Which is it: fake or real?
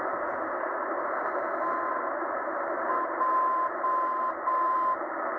real